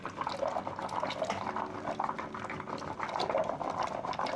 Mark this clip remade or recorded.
recorded